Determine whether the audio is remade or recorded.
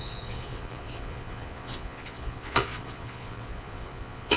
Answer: remade